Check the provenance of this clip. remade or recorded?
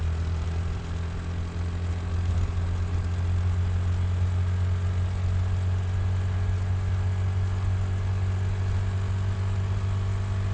recorded